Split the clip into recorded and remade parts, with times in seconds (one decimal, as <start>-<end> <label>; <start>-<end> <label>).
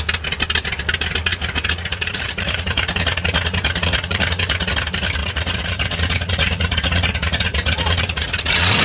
0.0-1.3 recorded; 1.3-4.7 remade; 4.7-5.2 recorded; 5.2-8.8 remade